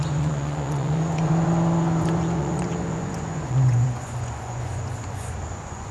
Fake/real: fake